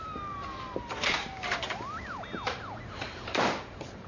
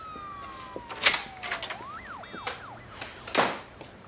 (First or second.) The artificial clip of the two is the first